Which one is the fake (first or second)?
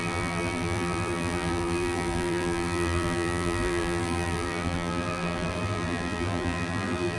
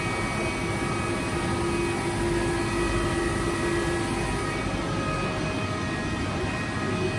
first